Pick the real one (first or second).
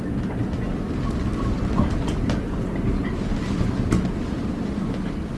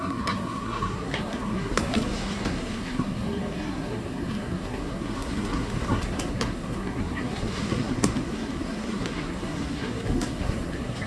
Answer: first